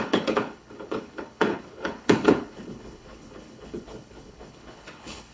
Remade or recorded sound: remade